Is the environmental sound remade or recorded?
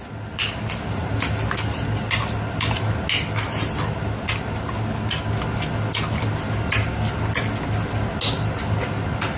recorded